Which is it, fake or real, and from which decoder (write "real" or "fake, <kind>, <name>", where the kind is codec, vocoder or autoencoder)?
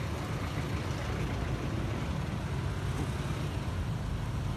real